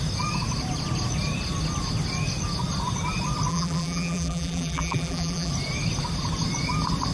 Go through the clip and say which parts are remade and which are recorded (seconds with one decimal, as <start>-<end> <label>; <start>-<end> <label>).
0.0-3.5 recorded; 3.5-5.5 remade; 5.5-7.1 recorded